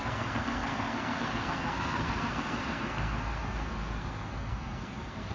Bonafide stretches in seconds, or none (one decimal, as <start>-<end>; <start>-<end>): none